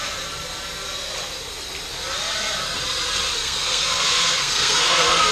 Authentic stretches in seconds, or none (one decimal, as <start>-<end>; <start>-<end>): 0.0-3.4